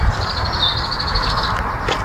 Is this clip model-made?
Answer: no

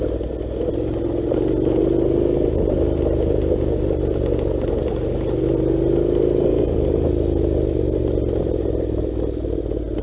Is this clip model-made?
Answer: no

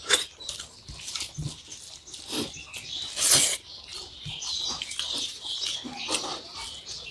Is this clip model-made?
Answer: no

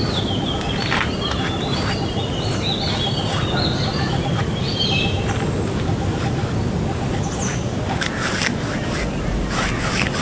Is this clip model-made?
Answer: no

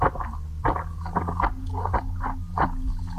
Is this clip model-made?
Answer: no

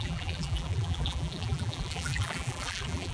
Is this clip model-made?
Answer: yes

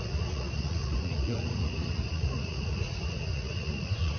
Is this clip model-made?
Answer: yes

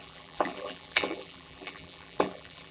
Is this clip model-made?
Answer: yes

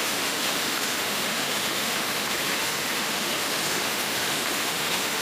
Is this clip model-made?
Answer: yes